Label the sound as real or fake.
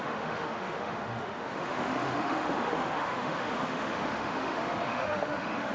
fake